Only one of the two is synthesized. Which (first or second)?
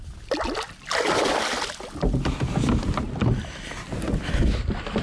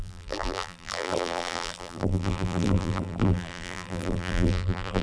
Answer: second